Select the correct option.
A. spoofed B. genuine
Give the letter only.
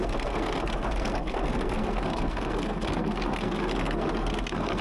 A